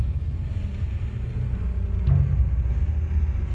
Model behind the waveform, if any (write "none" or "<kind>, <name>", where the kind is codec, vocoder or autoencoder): none